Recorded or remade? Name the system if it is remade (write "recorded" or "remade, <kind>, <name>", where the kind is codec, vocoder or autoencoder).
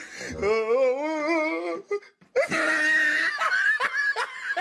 recorded